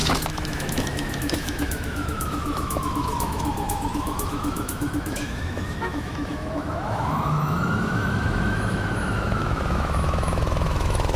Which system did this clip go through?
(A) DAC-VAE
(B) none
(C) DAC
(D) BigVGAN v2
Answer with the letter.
A